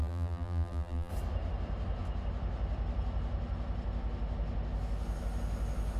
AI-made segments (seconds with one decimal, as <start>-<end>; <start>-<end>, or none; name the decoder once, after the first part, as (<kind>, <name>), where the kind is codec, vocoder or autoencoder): 0.0-1.1 (vocoder, BigVGAN v2)